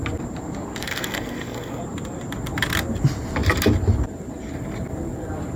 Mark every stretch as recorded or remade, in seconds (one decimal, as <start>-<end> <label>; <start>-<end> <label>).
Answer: 0.0-0.8 recorded; 0.8-1.8 remade; 1.8-5.6 recorded